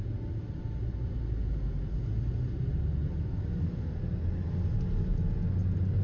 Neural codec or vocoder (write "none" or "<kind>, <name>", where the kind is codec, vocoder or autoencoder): none